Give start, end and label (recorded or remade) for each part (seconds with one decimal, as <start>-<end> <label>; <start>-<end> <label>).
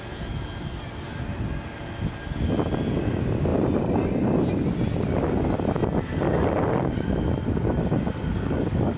0.0-8.3 recorded; 8.3-9.0 remade